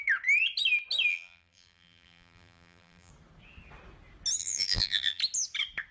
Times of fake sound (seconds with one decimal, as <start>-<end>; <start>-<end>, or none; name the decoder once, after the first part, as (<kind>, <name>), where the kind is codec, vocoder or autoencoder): 1.1-3.1 (vocoder, BigVGAN v2); 4.4-5.2